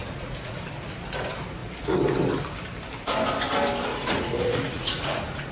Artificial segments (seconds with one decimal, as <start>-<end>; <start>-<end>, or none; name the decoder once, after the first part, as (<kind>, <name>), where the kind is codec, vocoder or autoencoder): 0.0-0.6 (vocoder, Vocos); 3.9-5.5